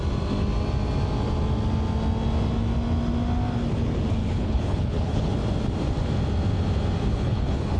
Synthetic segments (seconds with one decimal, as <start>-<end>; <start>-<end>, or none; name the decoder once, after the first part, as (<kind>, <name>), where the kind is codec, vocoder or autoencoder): 4.2-5.3 (codec, HILCodec); 7.1-7.8

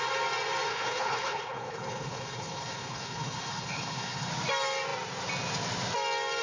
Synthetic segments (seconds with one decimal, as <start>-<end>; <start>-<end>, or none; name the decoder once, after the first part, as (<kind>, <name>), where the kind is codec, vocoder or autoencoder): 0.7-4.3 (codec, HILCodec)

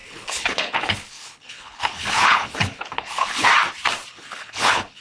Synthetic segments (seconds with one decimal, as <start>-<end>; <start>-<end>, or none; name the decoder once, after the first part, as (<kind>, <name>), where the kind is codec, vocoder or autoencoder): 0.0-3.5 (codec, HILCodec); 4.1-5.0

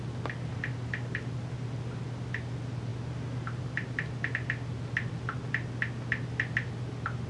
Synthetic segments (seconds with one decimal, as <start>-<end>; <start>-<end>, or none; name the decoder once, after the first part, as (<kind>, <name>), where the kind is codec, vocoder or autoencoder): none

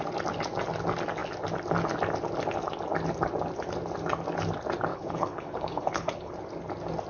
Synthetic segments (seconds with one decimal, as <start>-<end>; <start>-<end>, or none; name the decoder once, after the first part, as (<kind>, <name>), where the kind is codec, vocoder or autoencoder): 4.9-6.3 (codec, HILCodec)

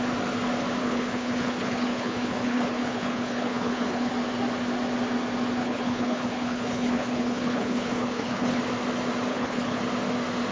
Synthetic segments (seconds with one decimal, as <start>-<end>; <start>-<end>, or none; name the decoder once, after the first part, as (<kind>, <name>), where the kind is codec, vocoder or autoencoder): 0.8-4.1 (codec, HILCodec); 5.6-8.6; 9.3-9.8

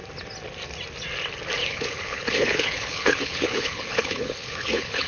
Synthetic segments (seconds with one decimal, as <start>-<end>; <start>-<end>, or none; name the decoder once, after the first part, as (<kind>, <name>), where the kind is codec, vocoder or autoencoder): 1.6-5.1 (codec, HILCodec)

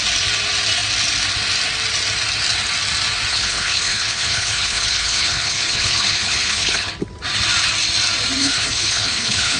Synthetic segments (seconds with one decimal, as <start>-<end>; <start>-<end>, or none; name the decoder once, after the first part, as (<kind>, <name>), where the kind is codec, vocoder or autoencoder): 3.3-6.9 (codec, HILCodec); 8.4-9.6